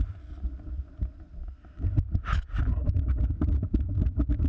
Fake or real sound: real